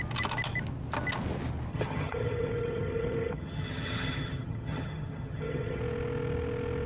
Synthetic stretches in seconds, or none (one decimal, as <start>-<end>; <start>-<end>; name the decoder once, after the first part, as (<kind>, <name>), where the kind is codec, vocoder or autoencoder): 1.7-5.8 (vocoder, HiFi-GAN)